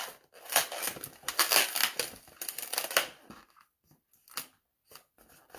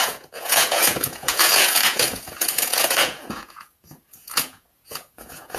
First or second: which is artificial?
second